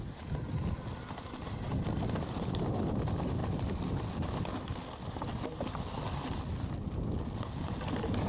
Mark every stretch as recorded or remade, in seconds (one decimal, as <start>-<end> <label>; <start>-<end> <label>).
0.0-8.3 recorded